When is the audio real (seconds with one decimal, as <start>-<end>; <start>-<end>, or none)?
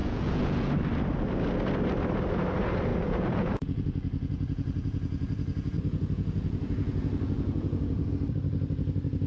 0.7-2.9; 8.1-9.3